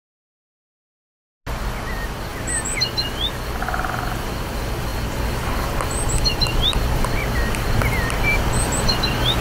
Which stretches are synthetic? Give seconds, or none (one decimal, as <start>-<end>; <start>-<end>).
none

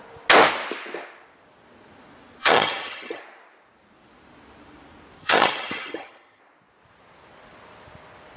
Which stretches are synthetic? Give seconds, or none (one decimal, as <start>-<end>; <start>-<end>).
2.4-3.2; 5.2-6.4

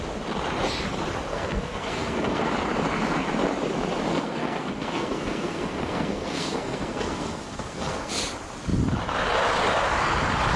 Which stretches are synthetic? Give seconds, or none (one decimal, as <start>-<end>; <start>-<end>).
1.3-2.5; 4.1-8.1

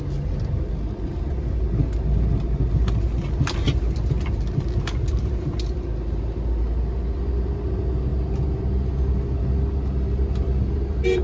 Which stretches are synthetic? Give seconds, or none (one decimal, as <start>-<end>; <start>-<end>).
none

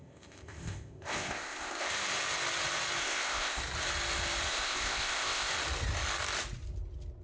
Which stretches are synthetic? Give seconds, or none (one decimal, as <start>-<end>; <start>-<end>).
0.0-1.9; 3.0-3.6; 4.5-5.5

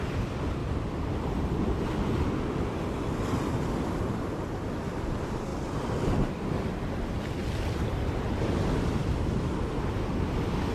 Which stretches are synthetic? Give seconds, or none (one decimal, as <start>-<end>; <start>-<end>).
0.6-2.1; 7.4-8.3